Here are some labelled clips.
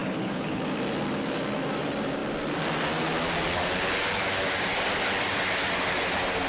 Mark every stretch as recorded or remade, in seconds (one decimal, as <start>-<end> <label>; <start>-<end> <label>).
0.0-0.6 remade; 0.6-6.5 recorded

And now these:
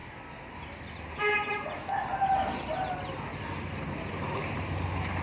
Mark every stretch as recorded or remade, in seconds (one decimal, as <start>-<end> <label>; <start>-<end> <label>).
0.0-5.2 recorded

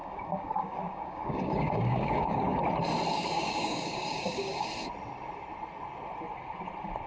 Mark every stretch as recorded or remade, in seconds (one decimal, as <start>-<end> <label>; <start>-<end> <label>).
0.0-2.6 remade; 2.6-3.1 recorded; 3.1-4.7 remade; 4.7-7.1 recorded

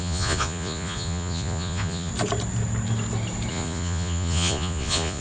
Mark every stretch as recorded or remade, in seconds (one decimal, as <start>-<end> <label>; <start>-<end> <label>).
0.0-2.1 remade; 2.1-3.5 recorded; 3.5-5.2 remade